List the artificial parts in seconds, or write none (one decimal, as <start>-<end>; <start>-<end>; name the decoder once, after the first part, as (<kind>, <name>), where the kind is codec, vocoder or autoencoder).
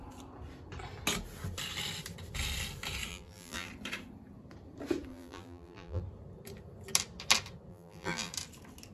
3.1-3.7 (vocoder, BigVGAN v2); 5.1-6.0; 7.7-8.3